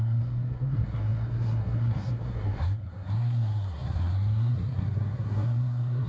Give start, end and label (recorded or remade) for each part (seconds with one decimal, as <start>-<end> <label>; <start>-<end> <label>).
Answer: 0.0-6.1 remade